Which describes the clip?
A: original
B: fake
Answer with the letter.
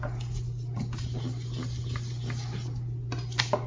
A